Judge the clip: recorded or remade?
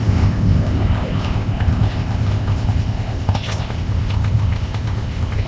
remade